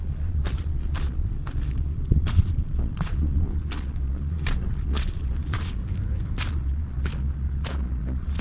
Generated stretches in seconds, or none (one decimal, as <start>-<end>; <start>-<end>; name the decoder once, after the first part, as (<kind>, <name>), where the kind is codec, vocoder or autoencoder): 0.0-5.8 (vocoder, Vocos); 6.5-8.4